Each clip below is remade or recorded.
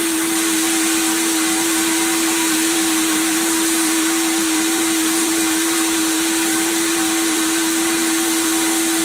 remade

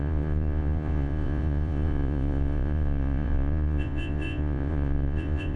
remade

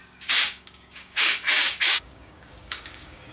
remade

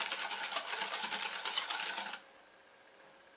recorded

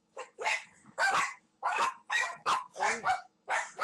remade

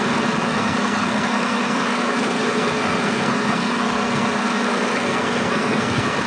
remade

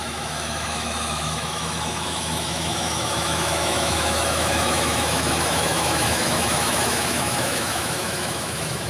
remade